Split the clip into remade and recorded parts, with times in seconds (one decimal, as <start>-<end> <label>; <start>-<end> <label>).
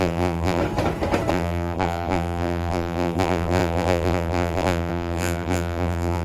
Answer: 0.0-0.6 remade; 0.6-1.3 recorded; 1.3-6.2 remade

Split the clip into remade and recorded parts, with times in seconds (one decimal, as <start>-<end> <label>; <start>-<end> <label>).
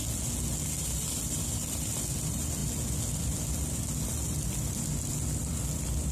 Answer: 0.0-1.1 recorded; 1.1-2.6 remade; 2.6-6.1 recorded